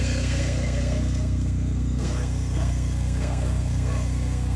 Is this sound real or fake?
fake